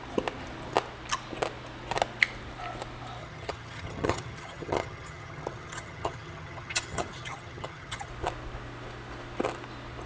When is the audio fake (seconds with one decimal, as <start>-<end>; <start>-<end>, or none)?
3.2-8.1